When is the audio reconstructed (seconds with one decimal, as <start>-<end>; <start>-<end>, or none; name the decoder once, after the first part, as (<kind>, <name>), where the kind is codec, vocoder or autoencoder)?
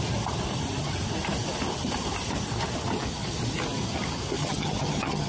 4.4-5.3 (vocoder, HiFi-GAN)